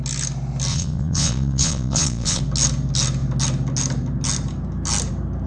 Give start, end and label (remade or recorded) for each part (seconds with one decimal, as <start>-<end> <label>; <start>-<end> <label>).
0.0-0.7 recorded; 0.7-2.4 remade; 2.4-5.5 recorded